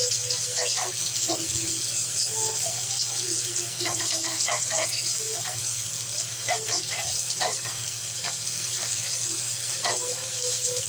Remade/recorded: remade